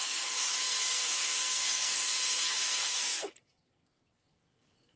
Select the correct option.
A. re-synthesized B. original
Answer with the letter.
A